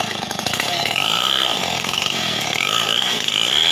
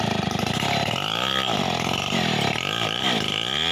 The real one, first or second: second